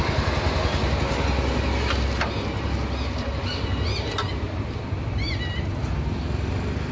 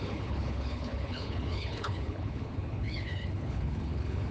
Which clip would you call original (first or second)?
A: first